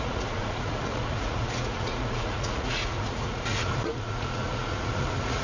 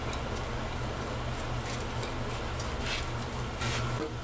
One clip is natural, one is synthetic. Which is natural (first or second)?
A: second